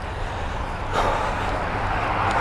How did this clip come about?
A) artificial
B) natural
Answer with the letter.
B